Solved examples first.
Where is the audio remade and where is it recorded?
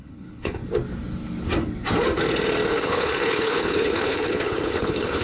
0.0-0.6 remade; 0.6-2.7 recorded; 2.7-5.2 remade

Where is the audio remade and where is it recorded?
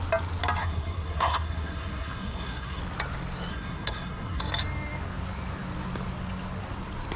0.0-0.6 recorded; 0.6-2.8 remade; 2.8-3.5 recorded; 3.5-4.4 remade; 4.4-7.2 recorded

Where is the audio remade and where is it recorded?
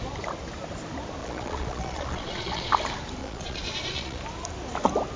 0.0-1.2 recorded; 1.2-2.7 remade; 2.7-3.2 recorded; 3.2-4.2 remade; 4.2-5.2 recorded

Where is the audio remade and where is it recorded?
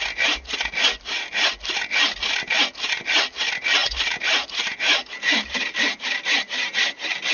0.0-3.8 recorded; 3.8-7.3 remade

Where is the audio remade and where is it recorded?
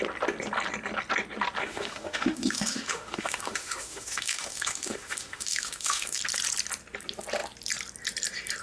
0.0-1.6 recorded; 1.6-6.2 remade; 6.2-8.6 recorded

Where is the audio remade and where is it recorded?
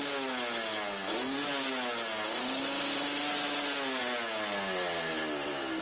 0.0-5.8 recorded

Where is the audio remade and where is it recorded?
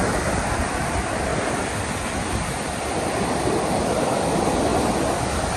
0.0-1.3 recorded; 1.3-3.8 remade; 3.8-5.6 recorded